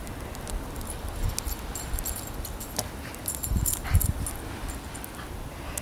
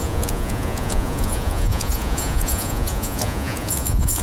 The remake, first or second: second